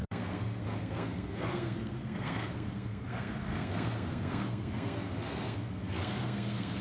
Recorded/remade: remade